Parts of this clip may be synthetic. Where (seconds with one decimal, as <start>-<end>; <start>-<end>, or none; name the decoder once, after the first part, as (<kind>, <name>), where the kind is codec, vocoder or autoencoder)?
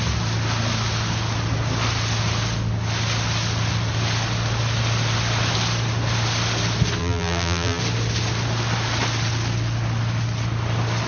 7.0-7.8 (vocoder, BigVGAN v2)